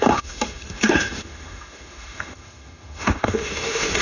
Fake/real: fake